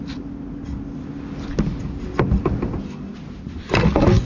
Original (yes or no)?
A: yes